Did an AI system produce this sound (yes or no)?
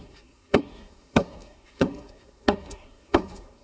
yes